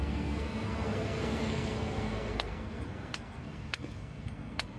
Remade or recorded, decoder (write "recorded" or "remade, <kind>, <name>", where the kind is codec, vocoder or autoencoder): remade, codec, SNAC